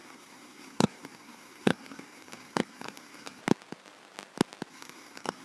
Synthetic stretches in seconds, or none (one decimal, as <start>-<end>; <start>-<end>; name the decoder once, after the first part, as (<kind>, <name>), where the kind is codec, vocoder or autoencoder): 0.0-3.4 (codec, SNAC); 4.7-5.4